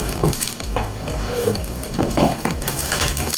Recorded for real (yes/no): no